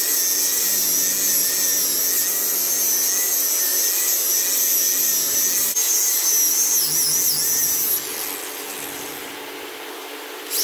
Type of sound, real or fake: real